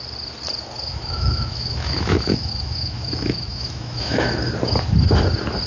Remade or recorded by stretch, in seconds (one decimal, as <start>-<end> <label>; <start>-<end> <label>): 0.0-0.9 recorded; 0.9-4.3 remade; 4.3-5.7 recorded